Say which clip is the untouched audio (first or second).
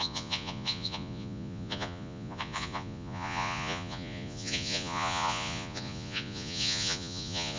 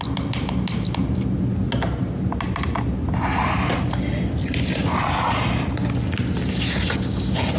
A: second